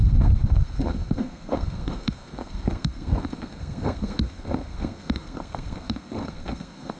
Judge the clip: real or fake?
fake